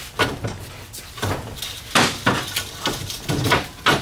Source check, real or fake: real